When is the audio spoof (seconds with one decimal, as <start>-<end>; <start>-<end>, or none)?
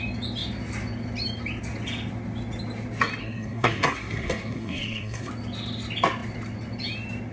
3.2-5.3